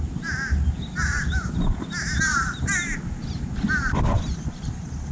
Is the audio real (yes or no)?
yes